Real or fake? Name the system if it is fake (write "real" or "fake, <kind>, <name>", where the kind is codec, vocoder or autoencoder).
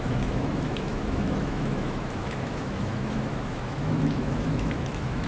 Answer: fake, autoencoder, DAC-VAE